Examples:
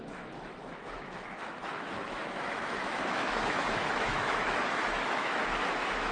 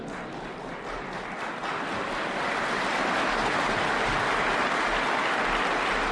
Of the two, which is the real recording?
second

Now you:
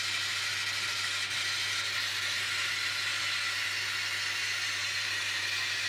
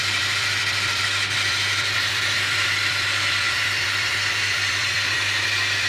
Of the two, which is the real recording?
first